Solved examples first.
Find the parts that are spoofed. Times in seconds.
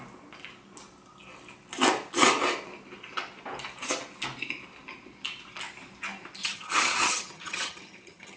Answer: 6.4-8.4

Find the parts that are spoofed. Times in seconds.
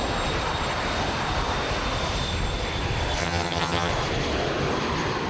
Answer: 3.2-3.9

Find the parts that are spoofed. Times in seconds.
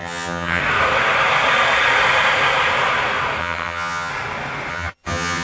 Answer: 0.0-0.6; 3.4-4.1; 4.7-5.4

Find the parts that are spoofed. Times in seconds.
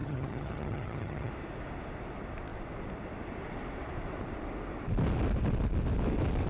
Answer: 0.0-1.3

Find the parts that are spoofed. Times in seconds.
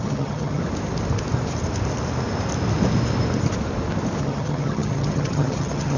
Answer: 0.0-0.6; 4.2-6.0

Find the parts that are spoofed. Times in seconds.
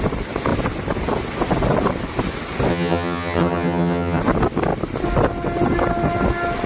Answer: 2.7-4.2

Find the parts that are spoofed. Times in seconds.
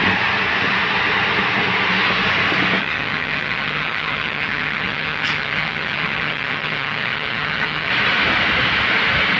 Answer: 2.8-7.9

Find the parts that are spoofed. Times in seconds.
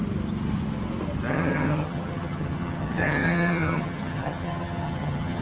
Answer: 1.3-5.4